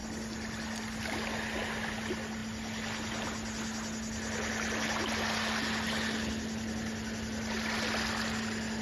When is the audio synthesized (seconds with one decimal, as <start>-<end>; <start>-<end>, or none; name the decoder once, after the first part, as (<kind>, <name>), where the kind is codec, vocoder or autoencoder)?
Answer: none